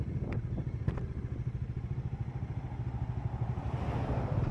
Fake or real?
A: real